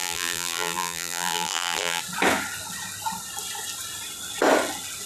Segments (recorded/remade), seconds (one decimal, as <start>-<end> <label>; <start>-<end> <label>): 0.0-2.0 remade; 2.0-5.1 recorded